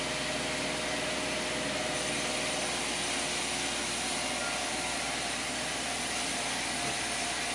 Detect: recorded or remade recorded